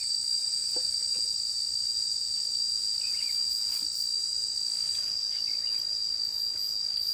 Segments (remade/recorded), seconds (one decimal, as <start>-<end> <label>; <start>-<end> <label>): 0.0-7.1 recorded